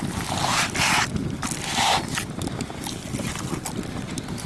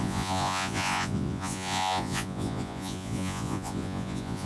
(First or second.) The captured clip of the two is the first